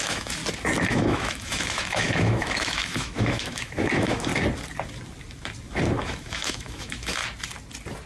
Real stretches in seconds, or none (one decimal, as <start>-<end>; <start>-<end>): 0.4-0.9; 4.3-6.0; 7.2-8.1

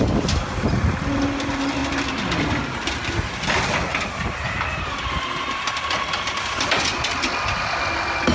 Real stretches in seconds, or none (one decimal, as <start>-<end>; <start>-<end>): 0.0-8.3

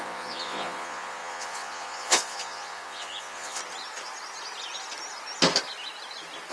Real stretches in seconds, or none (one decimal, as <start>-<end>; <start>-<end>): 3.6-6.5

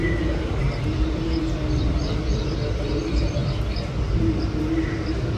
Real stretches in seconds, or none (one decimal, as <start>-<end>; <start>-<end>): 0.0-5.4

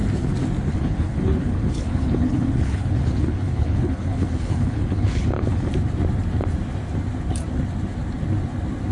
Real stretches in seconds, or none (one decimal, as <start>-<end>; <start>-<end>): 0.0-0.7; 5.7-8.9

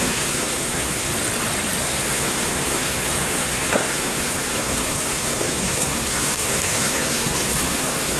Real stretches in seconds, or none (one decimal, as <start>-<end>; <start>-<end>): 1.1-1.8